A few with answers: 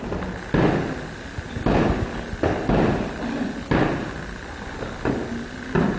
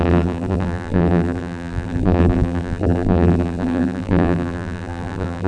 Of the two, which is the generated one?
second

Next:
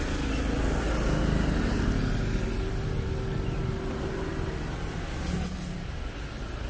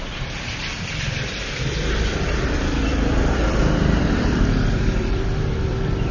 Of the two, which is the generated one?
second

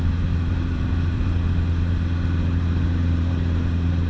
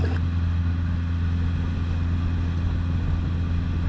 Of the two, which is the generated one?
first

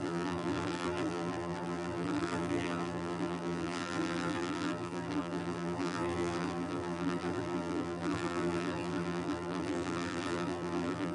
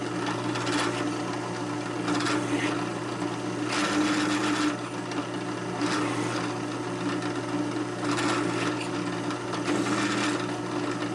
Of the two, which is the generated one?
first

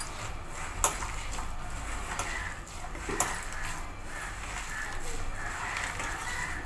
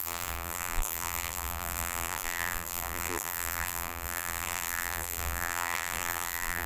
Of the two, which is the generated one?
second